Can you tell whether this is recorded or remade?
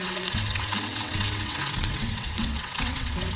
remade